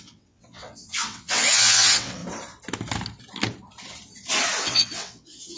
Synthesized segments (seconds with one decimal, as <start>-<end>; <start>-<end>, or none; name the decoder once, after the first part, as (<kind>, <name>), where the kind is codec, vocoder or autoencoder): 0.0-2.2 (vocoder, WaveNeXt); 4.6-5.6